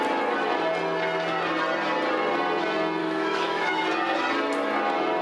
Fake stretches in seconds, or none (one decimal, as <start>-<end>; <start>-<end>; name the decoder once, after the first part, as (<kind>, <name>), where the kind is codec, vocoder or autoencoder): 3.0-3.8 (autoencoder, DAC-VAE)